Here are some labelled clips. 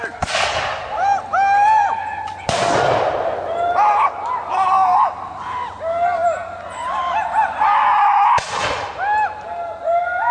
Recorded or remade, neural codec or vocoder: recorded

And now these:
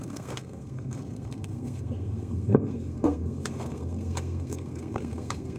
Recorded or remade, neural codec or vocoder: remade, codec, SNAC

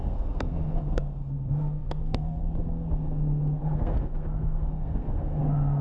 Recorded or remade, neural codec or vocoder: remade, codec, SNAC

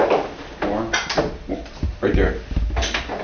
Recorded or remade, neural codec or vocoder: recorded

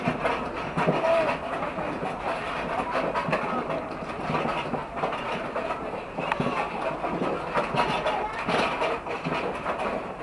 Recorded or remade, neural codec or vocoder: recorded